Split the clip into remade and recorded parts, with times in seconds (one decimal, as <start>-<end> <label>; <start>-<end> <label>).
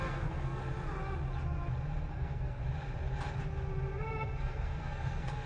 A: 0.0-0.6 remade; 0.6-2.1 recorded; 2.1-2.6 remade; 2.6-4.1 recorded; 4.1-5.5 remade